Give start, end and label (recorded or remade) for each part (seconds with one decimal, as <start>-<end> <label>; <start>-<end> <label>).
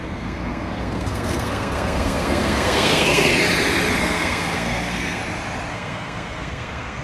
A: 0.0-3.3 remade; 3.3-4.0 recorded; 4.0-5.2 remade; 5.2-5.7 recorded; 5.7-7.0 remade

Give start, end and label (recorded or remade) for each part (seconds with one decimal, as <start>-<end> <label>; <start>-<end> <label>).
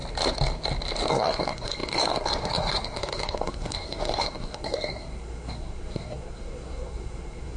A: 0.0-1.1 recorded; 1.1-7.6 remade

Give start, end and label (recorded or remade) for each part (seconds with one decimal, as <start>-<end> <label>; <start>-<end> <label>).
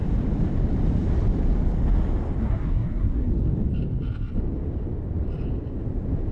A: 0.0-2.4 recorded; 2.4-3.3 remade; 3.3-6.3 recorded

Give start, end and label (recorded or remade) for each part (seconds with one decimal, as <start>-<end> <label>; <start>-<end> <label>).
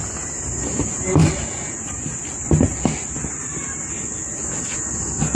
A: 0.0-5.3 recorded